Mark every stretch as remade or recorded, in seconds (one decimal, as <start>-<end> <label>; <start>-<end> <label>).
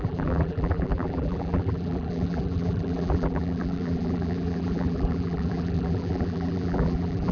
0.0-7.3 remade